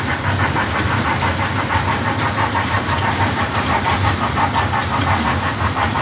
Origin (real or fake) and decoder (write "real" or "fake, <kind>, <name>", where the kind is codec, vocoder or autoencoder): real